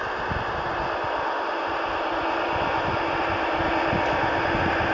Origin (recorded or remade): recorded